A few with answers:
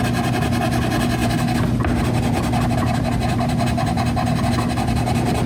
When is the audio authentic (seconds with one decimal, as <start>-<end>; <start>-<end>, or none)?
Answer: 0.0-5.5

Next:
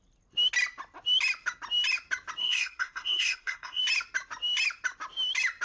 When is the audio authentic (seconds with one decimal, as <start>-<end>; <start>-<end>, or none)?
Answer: 0.0-2.4; 3.8-5.6

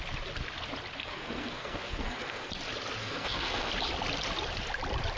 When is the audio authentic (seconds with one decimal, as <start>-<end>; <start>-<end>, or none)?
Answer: 0.0-1.0; 2.5-3.0; 3.7-5.2

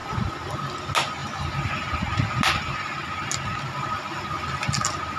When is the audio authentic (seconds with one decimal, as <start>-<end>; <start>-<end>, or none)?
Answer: 0.0-5.2

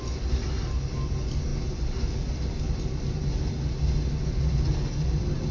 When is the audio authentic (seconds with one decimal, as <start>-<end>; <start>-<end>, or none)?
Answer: 0.0-5.5

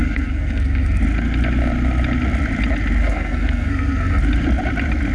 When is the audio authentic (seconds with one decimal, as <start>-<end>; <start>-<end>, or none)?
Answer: 1.0-3.0; 4.2-5.1